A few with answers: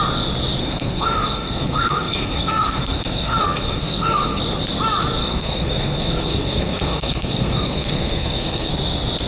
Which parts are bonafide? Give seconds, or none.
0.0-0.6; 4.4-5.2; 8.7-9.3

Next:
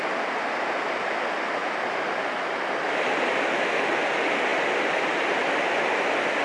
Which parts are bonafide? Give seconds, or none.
0.0-6.4

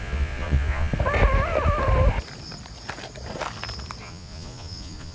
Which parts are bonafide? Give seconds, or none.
0.9-4.0

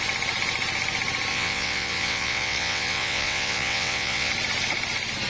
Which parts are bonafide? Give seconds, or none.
0.0-1.3; 4.3-5.3

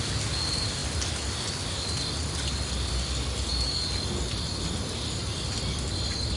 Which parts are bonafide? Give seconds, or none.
0.0-6.4

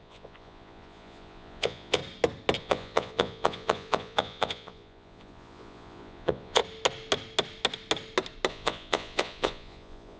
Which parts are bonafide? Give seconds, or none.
2.0-2.6; 6.6-8.5

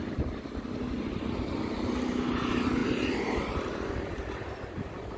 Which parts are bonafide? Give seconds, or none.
0.0-5.2